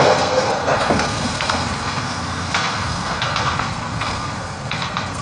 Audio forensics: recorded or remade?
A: remade